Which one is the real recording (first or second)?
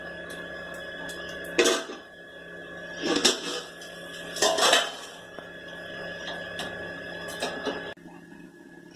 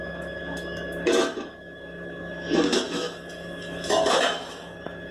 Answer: first